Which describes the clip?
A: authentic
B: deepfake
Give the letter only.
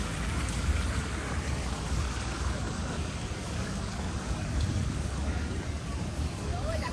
B